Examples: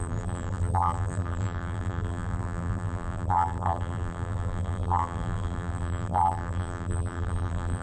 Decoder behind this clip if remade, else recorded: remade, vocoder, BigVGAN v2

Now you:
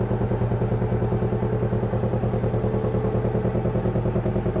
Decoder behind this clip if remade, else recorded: recorded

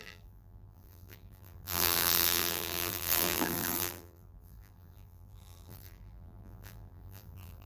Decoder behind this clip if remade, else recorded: remade, vocoder, BigVGAN v2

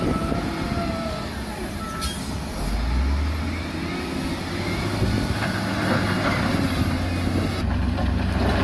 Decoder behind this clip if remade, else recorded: recorded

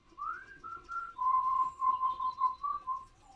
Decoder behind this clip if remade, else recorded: remade, vocoder, WaveNeXt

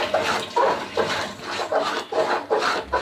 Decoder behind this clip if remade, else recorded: recorded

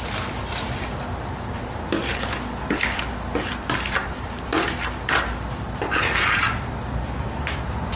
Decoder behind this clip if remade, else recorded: remade, vocoder, BigVGAN v2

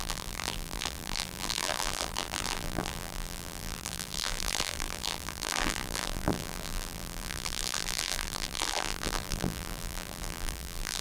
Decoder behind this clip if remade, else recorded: remade, vocoder, BigVGAN v2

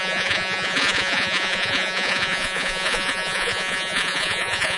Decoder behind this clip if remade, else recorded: remade, vocoder, Vocos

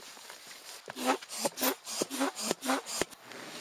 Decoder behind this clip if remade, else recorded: recorded